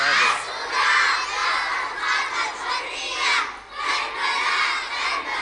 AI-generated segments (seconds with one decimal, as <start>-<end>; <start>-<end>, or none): none